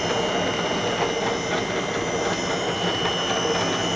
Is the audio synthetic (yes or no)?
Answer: no